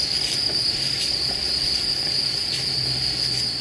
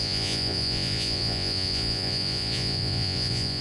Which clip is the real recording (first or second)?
first